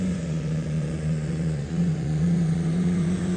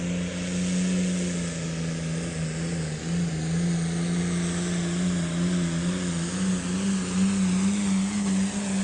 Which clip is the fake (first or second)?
first